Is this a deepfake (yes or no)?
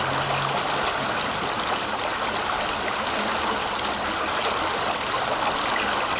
no